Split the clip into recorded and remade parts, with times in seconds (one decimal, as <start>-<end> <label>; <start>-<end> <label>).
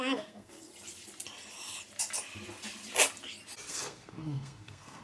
0.0-0.7 remade; 0.7-3.7 recorded; 3.7-5.0 remade